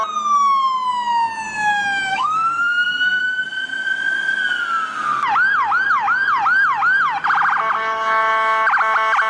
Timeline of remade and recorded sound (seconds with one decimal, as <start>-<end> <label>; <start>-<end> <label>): 0.0-2.1 recorded; 2.1-3.2 remade; 3.2-9.3 recorded

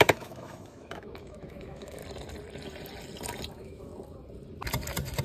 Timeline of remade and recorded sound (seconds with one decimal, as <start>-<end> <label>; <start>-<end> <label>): 0.0-2.0 remade; 2.0-3.5 recorded; 3.5-3.9 remade; 3.9-5.2 recorded

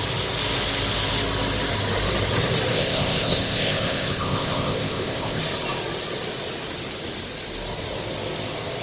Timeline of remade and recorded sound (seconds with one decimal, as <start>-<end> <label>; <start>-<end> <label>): 0.0-2.7 recorded; 2.7-5.4 remade; 5.4-8.8 recorded

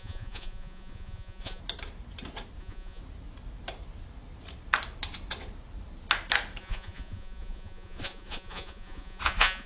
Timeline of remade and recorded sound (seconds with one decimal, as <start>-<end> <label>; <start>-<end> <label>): 0.0-1.6 remade; 1.6-2.6 recorded; 2.6-3.0 remade; 3.0-6.6 recorded; 6.6-9.7 remade

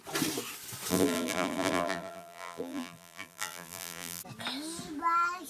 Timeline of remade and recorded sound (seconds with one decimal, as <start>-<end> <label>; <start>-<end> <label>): 0.0-0.9 recorded; 0.9-4.2 remade; 4.2-5.5 recorded